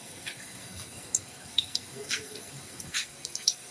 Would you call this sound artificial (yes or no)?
yes